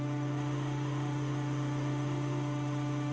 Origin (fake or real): fake